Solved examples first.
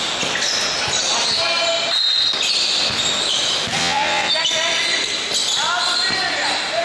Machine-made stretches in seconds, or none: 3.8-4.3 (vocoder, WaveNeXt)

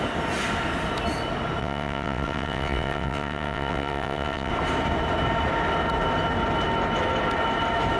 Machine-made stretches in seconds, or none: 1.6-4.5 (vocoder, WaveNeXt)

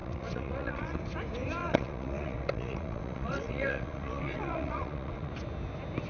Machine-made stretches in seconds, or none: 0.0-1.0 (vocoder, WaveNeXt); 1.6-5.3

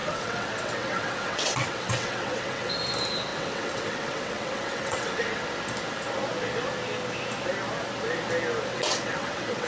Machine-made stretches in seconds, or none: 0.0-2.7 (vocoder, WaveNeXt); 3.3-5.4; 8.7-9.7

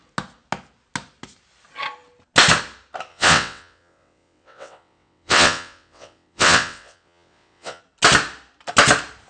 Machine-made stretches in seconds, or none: 3.1-7.8 (vocoder, WaveNeXt)